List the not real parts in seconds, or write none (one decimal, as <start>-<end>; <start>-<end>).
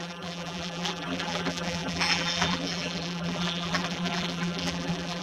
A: 0.0-5.2